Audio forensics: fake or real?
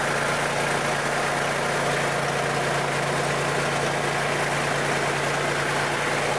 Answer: real